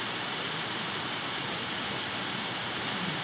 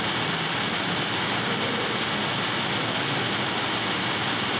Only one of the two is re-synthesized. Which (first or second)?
first